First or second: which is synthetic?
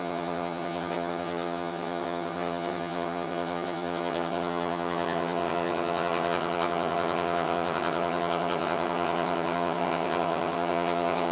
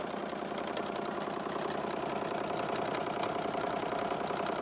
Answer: first